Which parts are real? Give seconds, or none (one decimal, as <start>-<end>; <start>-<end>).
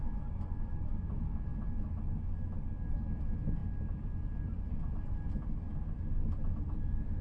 0.0-3.6; 4.8-7.2